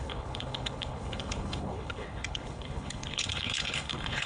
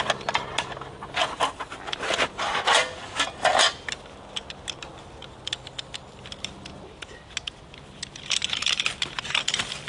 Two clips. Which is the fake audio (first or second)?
first